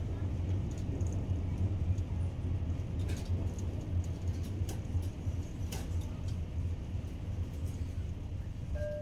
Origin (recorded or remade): recorded